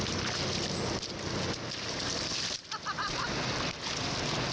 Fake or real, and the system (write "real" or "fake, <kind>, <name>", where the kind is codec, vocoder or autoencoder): real